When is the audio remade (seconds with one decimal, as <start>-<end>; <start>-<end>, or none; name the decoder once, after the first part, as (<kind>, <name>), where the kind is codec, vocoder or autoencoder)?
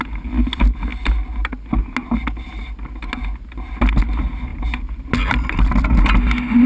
none